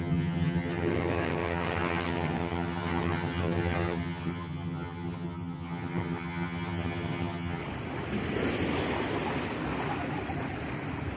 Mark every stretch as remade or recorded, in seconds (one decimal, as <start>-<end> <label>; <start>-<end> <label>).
0.0-7.6 remade; 7.6-11.2 recorded